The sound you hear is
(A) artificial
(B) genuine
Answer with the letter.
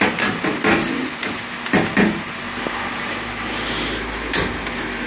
B